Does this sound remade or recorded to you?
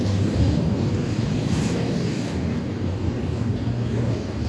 remade